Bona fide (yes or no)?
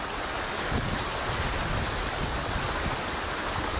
yes